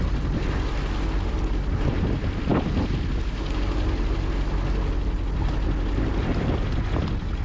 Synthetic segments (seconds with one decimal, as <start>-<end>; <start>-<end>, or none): none